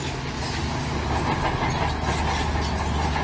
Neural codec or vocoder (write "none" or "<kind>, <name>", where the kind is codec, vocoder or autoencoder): none